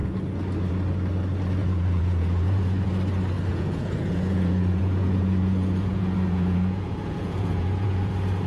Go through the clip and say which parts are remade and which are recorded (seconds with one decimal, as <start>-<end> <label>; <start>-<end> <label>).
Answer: 0.0-1.6 recorded; 1.6-2.9 remade; 2.9-3.5 recorded; 3.5-8.1 remade; 8.1-8.5 recorded